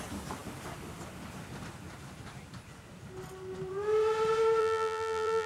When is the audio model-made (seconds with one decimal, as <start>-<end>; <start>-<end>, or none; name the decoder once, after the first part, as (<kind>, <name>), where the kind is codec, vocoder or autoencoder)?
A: 4.6-5.5 (vocoder, BigVGAN v2)